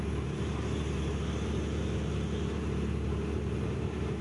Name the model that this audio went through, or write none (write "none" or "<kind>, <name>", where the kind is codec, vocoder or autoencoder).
none